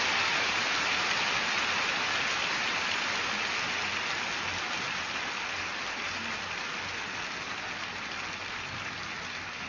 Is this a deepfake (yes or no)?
no